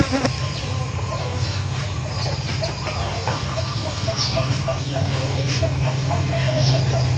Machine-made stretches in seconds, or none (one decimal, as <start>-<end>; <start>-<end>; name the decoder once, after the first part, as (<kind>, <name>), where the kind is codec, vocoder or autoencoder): 1.2-1.8 (codec, DAC); 3.0-6.8